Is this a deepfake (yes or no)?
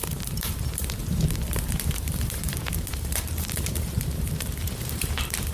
yes